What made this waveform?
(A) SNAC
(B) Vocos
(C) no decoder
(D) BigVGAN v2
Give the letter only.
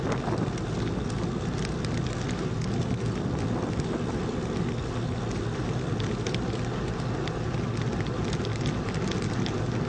C